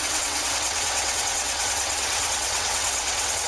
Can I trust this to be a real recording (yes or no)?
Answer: no